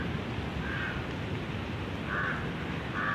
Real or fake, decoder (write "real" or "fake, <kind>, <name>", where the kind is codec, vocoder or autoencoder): real